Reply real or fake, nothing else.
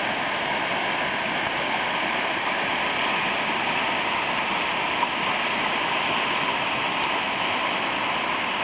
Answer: real